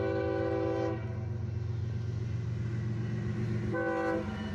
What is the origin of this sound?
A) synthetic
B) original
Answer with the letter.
B